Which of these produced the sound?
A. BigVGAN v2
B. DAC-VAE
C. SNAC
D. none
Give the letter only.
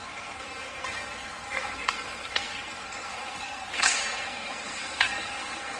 C